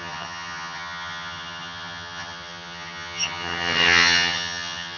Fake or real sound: fake